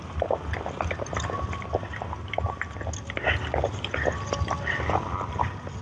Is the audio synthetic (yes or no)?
no